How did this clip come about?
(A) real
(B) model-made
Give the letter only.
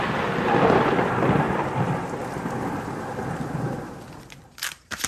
B